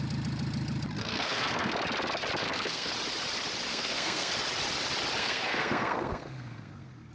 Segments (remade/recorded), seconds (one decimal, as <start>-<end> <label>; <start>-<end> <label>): 0.0-1.0 recorded; 1.0-1.7 remade; 1.7-2.4 recorded; 2.4-2.9 remade; 2.9-3.7 recorded; 3.7-4.3 remade; 4.3-5.2 recorded; 5.2-7.1 remade